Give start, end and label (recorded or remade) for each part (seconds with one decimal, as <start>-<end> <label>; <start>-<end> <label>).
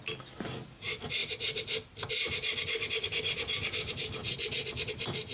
0.0-1.2 recorded; 1.2-2.1 remade; 2.1-5.3 recorded